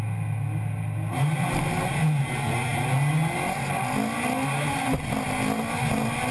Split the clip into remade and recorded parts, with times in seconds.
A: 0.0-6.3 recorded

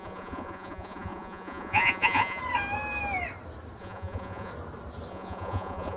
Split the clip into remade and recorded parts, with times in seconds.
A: 0.0-2.4 remade; 2.4-3.8 recorded; 3.8-4.5 remade; 4.5-5.1 recorded; 5.1-6.0 remade

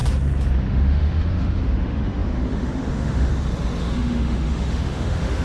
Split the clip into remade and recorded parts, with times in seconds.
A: 0.0-0.7 recorded; 0.7-3.3 remade; 3.3-3.8 recorded; 3.8-5.4 remade

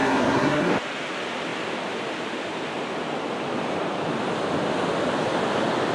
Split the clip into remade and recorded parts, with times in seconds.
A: 0.0-0.7 remade; 0.7-5.9 recorded

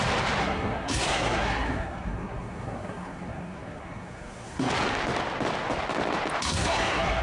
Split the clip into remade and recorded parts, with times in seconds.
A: 0.0-0.4 recorded; 0.4-4.7 remade; 4.7-6.4 recorded; 6.4-7.2 remade

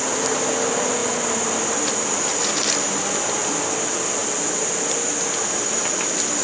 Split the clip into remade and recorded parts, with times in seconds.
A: 0.0-6.4 recorded